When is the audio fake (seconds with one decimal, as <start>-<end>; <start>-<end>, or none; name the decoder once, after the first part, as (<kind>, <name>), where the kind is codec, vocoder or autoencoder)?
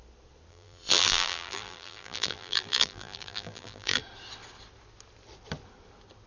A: 0.5-4.0 (vocoder, BigVGAN v2)